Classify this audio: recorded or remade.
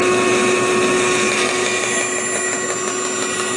recorded